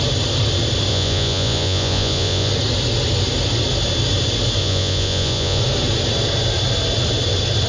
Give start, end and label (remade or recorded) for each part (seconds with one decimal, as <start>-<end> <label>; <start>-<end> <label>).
0.0-0.9 recorded; 0.9-2.5 remade; 2.5-4.6 recorded; 4.6-5.6 remade; 5.6-7.7 recorded